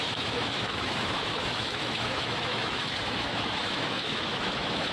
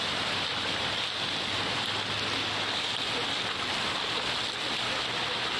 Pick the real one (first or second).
second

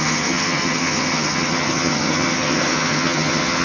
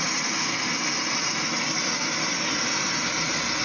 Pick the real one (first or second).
second